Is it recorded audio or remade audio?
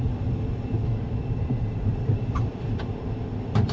remade